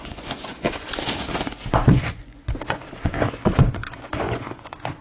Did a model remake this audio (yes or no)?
yes